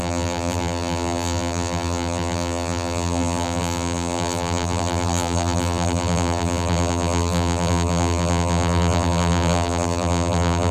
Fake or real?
fake